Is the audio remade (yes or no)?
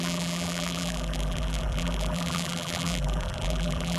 yes